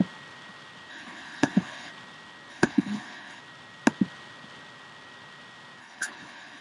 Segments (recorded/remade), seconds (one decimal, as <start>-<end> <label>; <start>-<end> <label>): 0.0-0.9 recorded; 0.9-1.9 remade; 1.9-2.5 recorded; 2.5-3.4 remade; 3.4-5.8 recorded; 5.8-6.6 remade